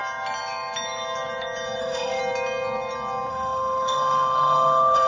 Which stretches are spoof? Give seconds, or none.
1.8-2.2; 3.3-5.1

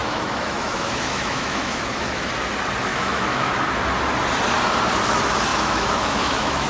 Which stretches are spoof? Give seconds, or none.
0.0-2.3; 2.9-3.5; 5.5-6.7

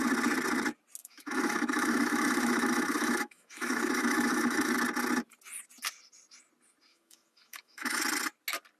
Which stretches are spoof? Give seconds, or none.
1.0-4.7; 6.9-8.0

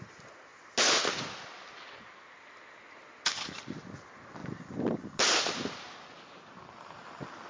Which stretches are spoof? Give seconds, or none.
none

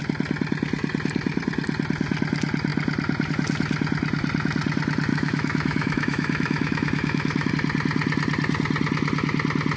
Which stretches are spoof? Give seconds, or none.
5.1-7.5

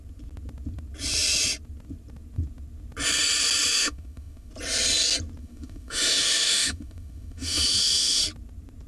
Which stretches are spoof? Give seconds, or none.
3.7-4.5; 5.4-8.2